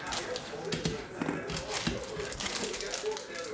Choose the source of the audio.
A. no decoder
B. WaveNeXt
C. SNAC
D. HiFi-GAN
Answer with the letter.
A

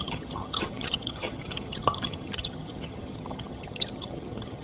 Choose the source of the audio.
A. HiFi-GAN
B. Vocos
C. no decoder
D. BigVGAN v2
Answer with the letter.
A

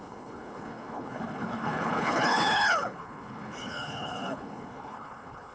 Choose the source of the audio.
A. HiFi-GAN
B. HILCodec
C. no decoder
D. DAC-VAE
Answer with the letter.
B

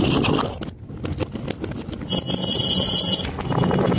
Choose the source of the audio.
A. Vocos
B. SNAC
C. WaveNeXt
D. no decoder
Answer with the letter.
D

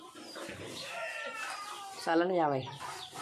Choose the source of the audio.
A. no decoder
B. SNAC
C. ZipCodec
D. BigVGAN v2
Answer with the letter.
D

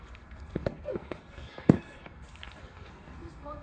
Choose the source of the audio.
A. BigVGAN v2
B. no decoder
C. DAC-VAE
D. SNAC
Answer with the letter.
D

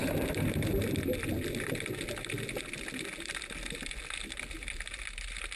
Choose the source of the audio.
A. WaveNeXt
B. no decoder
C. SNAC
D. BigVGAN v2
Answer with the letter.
B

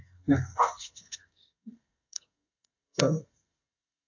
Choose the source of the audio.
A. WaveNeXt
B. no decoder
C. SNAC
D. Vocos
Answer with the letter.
C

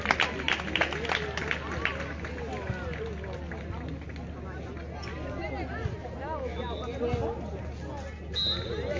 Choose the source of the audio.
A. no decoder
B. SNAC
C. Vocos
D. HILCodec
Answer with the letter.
A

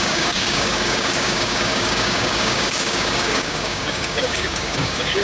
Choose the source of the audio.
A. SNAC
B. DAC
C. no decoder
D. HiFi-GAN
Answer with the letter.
B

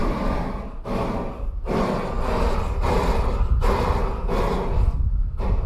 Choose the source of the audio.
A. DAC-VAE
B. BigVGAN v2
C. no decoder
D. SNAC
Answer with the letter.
C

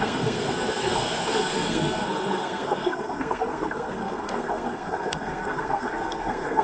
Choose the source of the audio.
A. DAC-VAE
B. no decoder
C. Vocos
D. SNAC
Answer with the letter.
D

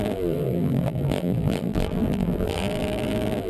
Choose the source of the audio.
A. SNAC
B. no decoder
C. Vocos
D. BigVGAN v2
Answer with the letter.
D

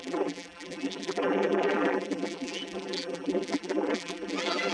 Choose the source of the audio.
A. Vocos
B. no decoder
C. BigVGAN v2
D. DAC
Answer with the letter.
C